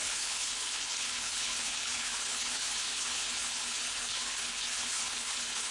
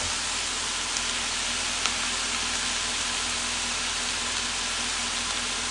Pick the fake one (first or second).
first